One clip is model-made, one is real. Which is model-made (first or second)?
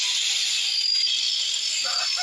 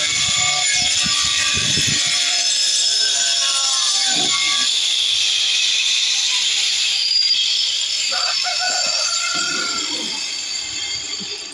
second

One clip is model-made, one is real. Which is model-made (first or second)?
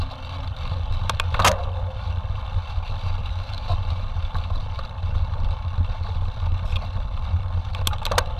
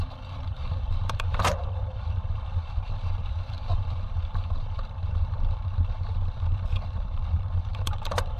second